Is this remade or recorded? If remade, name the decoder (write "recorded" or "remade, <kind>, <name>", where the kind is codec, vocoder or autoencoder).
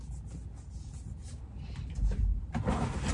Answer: recorded